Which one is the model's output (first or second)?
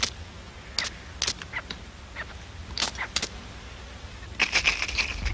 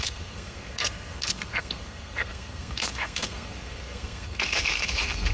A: second